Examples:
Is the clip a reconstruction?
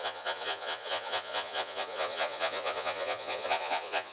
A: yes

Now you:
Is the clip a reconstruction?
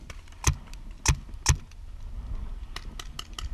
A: no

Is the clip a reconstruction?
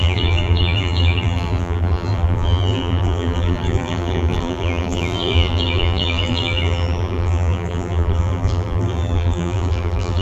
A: yes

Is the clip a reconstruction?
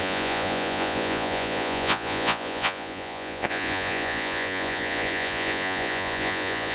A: yes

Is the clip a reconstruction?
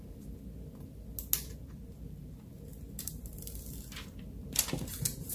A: no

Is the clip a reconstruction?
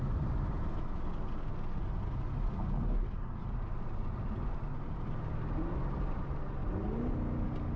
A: no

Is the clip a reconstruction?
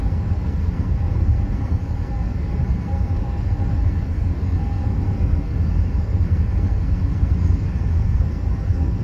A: yes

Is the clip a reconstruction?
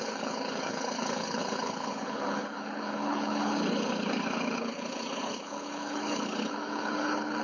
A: yes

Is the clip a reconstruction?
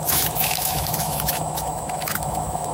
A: yes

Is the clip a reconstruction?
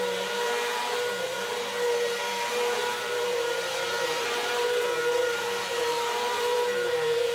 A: yes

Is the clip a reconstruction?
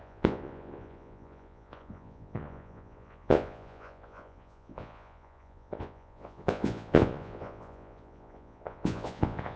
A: yes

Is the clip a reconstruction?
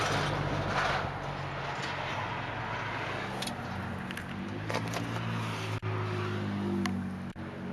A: no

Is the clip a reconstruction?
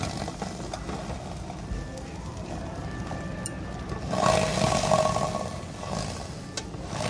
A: no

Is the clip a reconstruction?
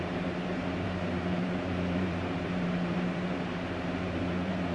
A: yes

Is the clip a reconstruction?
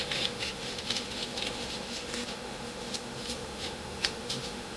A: yes